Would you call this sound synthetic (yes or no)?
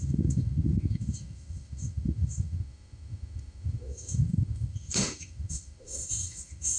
yes